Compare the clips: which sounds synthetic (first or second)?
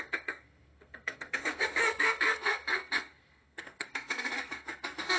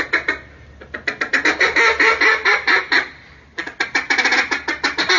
first